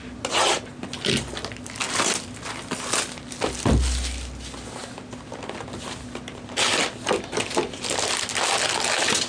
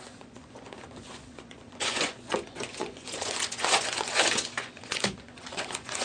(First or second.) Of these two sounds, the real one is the first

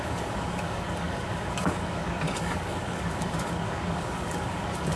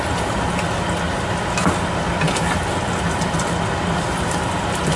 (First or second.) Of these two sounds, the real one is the second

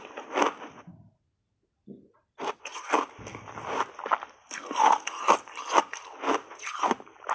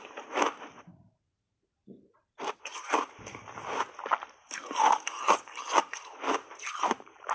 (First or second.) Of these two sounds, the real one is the first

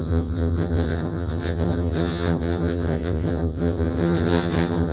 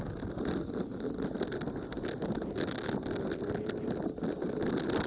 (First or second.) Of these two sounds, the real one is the second